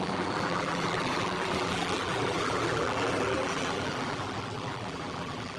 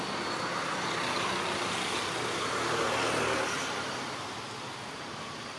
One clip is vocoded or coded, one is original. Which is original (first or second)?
second